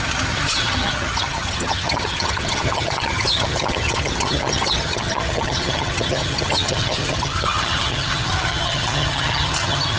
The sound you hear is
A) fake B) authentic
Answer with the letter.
A